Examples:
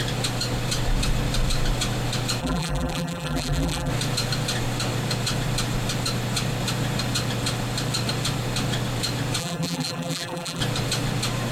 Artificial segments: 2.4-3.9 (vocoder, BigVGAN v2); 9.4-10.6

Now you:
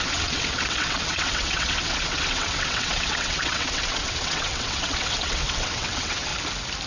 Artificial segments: 0.0-6.3 (vocoder, WaveNeXt)

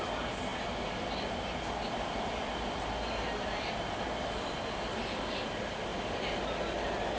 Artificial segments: none